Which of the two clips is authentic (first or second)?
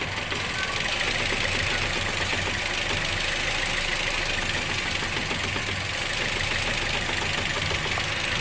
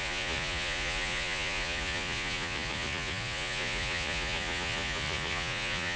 first